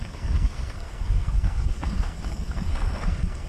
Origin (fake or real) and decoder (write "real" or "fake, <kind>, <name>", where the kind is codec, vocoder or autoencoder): fake, codec, SNAC